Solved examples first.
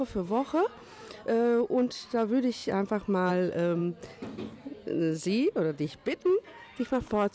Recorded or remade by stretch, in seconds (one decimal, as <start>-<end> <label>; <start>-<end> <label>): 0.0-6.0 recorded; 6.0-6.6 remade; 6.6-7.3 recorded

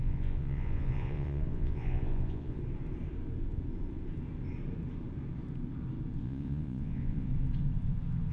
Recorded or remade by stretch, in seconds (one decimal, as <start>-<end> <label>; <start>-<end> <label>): 0.0-2.6 remade; 2.6-6.2 recorded; 6.2-7.3 remade; 7.3-8.3 recorded

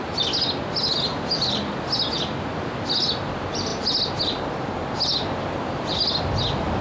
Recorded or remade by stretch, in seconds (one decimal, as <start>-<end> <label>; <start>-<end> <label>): 0.0-6.8 recorded

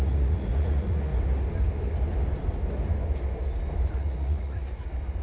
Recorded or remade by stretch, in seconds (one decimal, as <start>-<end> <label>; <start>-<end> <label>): 0.0-1.1 remade; 1.1-3.9 recorded; 3.9-4.6 remade; 4.6-5.2 recorded